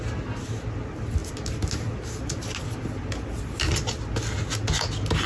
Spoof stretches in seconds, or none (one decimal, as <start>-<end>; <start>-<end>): none